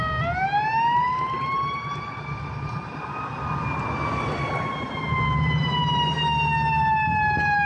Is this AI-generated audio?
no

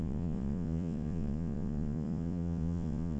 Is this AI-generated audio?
yes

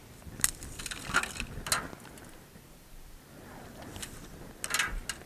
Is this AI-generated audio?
no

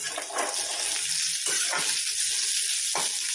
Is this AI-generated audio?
no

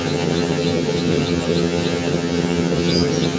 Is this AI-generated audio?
yes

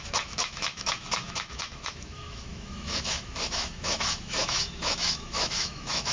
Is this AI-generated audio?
yes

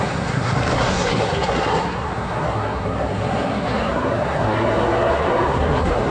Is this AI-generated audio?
yes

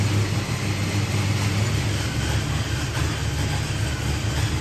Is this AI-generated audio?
no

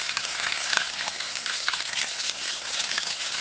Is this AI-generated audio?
yes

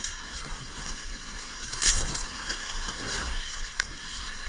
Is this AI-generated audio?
yes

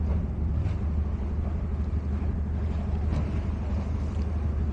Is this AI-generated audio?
no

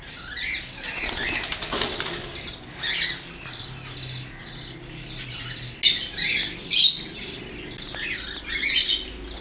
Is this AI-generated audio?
no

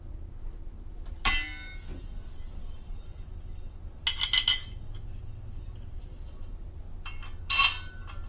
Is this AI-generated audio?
no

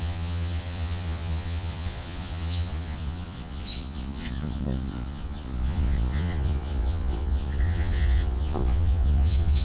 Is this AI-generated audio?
yes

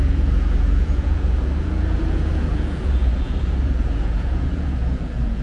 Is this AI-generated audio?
yes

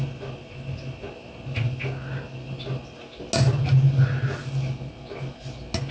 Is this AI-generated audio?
no